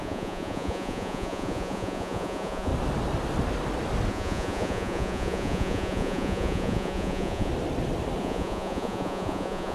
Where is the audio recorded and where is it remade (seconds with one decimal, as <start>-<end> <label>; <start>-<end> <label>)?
0.0-2.7 remade; 2.7-4.1 recorded; 4.1-7.5 remade; 7.5-8.2 recorded; 8.2-9.7 remade